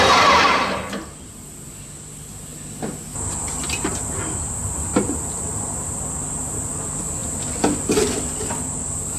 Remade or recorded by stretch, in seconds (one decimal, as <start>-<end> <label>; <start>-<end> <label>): 0.0-9.2 recorded